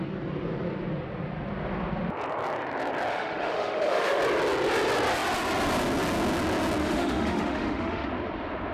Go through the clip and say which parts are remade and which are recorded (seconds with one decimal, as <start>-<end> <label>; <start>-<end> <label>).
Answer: 0.0-3.1 recorded; 3.1-4.2 remade; 4.2-6.8 recorded; 6.8-8.1 remade; 8.1-8.7 recorded